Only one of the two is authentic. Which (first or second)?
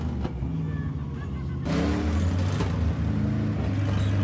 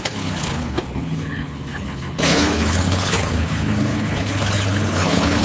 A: first